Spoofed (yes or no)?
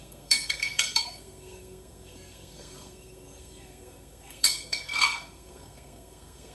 yes